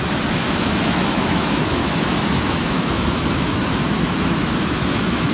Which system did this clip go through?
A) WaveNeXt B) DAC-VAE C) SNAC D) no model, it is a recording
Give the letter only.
B